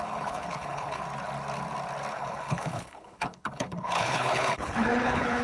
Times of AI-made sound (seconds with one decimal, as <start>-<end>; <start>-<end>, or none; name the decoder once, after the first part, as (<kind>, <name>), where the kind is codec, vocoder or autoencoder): 0.0-1.0 (codec, HILCodec); 2.1-5.4